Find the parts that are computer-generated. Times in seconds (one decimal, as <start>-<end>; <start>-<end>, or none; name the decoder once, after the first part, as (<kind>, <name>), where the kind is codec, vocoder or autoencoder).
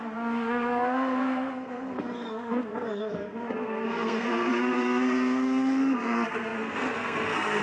0.0-7.6 (codec, SNAC)